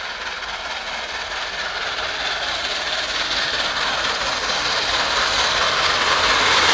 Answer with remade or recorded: recorded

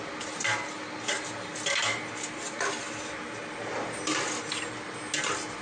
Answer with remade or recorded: recorded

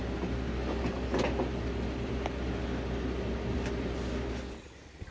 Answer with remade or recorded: recorded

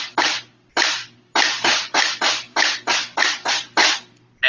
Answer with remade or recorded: recorded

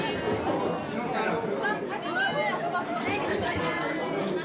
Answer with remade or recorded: recorded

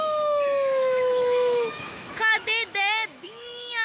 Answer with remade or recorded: remade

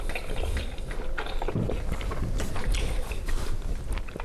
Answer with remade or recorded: recorded